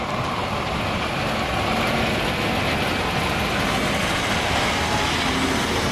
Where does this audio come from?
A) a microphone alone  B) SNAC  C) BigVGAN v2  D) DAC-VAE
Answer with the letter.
A